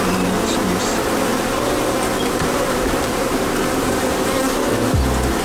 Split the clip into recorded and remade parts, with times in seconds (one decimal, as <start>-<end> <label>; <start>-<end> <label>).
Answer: 0.0-1.3 recorded; 1.3-4.5 remade; 4.5-5.4 recorded